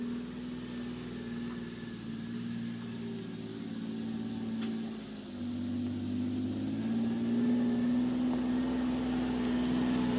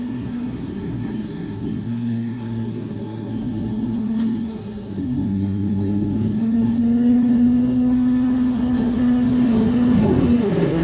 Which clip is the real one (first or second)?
first